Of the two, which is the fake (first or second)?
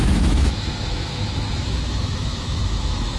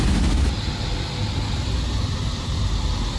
first